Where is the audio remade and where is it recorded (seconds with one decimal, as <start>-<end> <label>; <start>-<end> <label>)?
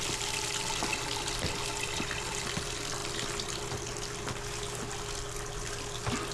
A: 0.0-6.3 recorded